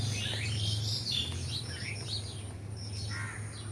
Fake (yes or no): no